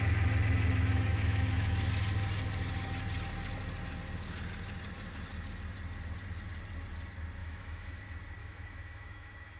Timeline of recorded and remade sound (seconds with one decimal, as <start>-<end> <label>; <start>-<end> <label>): 0.0-0.9 recorded; 0.9-1.9 remade; 1.9-7.4 recorded; 7.4-8.0 remade; 8.0-8.4 recorded; 8.4-9.6 remade